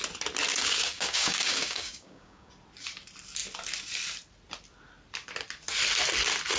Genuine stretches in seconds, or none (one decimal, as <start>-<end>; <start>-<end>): 0.0-0.5; 2.5-6.6